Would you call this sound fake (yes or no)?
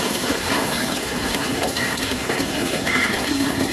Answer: yes